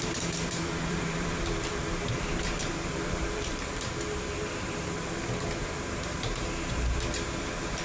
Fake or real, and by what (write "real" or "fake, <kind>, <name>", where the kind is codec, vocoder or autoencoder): fake, vocoder, BigVGAN v2